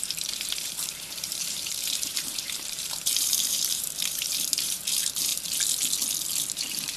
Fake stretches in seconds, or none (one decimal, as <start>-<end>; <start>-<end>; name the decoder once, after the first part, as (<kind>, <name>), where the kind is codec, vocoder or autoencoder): 0.0-5.3 (vocoder, BigVGAN v2); 6.3-7.0